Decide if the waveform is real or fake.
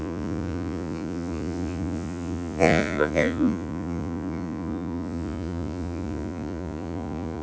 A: fake